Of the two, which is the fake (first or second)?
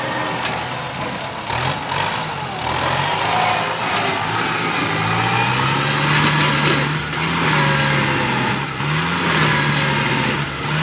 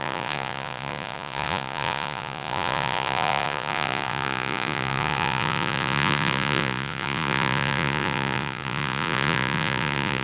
second